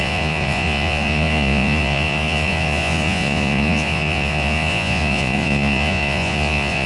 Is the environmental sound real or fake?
fake